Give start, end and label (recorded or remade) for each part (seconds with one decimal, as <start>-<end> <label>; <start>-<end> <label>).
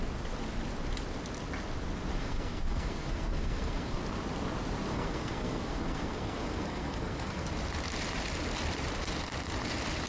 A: 0.0-2.2 recorded; 2.2-4.0 remade; 4.0-4.9 recorded; 4.9-7.5 remade; 7.5-10.1 recorded